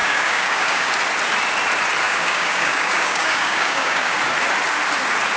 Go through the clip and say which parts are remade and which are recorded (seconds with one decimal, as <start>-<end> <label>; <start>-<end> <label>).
0.0-0.9 remade; 0.9-2.0 recorded; 2.0-4.2 remade; 4.2-5.4 recorded